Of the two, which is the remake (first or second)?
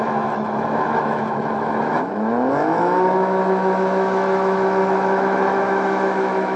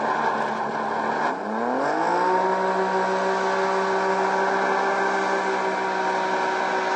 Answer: first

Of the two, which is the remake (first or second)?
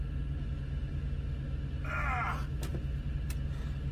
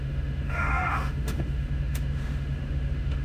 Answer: second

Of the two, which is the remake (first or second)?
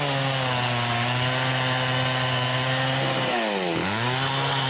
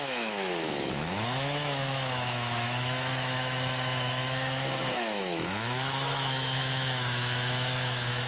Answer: second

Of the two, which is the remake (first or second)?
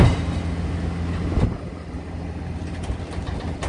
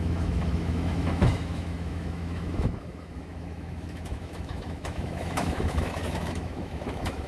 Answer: second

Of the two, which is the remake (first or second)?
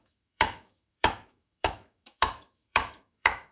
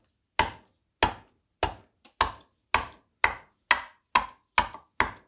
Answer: first